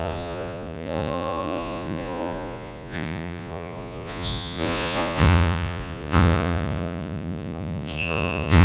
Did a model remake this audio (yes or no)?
yes